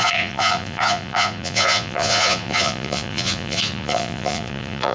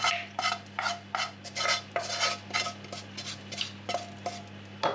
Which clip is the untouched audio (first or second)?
second